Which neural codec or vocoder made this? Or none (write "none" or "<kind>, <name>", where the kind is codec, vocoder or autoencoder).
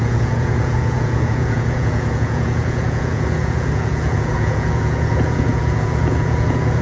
vocoder, Vocos